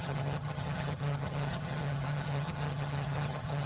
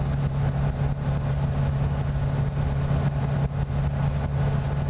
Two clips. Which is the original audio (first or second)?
second